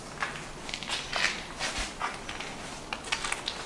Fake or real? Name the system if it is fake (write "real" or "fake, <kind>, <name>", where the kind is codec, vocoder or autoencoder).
real